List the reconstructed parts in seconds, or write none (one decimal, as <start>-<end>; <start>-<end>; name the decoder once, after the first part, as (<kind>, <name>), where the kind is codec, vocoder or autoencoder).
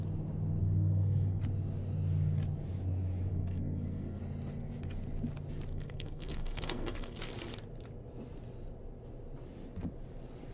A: 0.6-1.4 (codec, SNAC); 3.3-4.2; 5.7-7.2